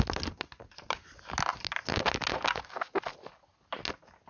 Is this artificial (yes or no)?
no